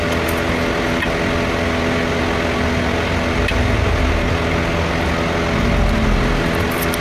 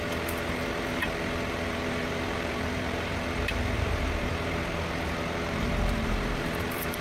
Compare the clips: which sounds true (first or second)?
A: first